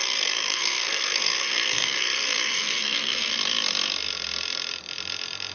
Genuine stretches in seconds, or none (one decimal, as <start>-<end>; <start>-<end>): 3.3-5.5